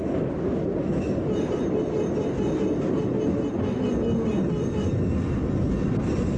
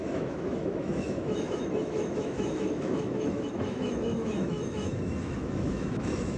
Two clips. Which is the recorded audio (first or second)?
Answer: first